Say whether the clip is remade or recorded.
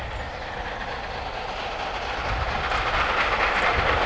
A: recorded